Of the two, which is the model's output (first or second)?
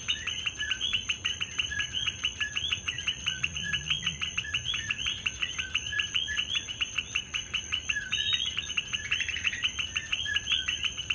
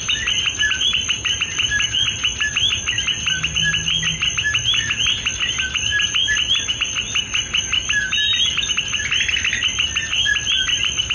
first